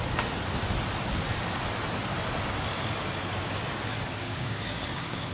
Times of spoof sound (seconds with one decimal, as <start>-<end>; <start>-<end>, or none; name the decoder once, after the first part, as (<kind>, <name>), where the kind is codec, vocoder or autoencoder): 4.2-5.3 (codec, DAC)